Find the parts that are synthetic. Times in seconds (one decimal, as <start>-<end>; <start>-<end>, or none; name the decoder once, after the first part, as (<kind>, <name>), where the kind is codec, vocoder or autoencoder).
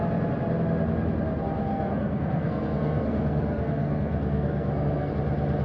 1.7-5.1 (codec, SNAC)